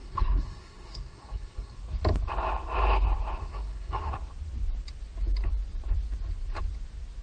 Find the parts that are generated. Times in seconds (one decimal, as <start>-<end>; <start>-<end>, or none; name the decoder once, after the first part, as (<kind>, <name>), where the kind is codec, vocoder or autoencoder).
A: 0.0-1.8 (codec, SNAC); 3.4-4.1